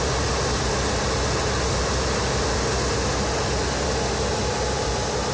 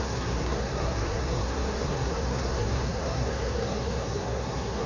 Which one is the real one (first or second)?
first